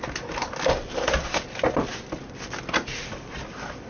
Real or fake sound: real